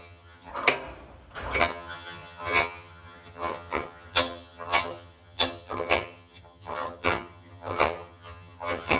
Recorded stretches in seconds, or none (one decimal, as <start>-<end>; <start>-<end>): 0.5-1.6